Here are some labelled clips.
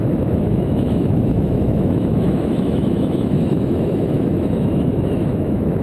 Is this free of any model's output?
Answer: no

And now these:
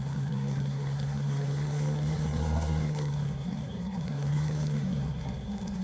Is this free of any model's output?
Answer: no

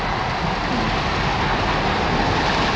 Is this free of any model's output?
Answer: yes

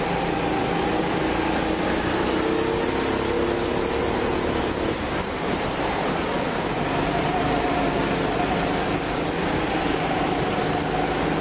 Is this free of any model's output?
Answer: yes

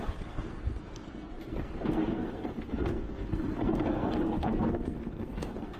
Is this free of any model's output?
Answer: no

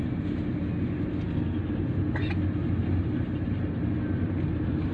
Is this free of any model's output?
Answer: yes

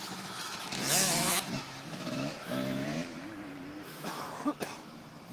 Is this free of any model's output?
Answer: no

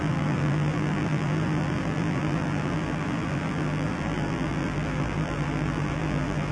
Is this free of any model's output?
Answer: no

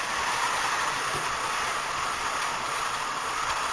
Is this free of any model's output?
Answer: no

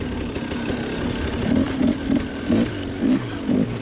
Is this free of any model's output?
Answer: yes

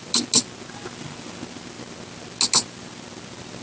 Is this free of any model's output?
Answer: yes